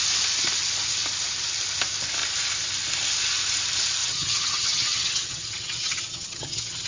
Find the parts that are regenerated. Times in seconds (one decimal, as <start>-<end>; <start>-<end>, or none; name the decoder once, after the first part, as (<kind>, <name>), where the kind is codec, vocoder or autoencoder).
4.0-6.9 (vocoder, HiFi-GAN)